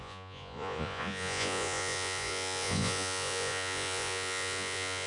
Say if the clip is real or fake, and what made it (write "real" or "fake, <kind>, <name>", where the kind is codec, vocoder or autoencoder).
fake, vocoder, Vocos